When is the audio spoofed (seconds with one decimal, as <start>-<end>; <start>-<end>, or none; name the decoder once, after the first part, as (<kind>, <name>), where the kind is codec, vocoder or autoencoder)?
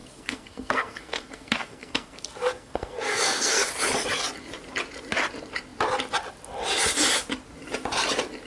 0.0-3.7 (codec, SNAC)